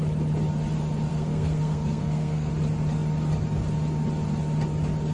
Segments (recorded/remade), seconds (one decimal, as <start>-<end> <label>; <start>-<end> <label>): 0.0-1.1 recorded; 1.1-2.5 remade; 2.5-5.1 recorded